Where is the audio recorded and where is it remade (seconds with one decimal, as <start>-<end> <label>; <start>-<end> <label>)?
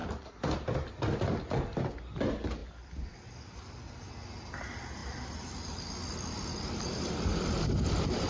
0.0-2.6 recorded; 2.6-4.0 remade; 4.0-5.0 recorded; 5.0-8.3 remade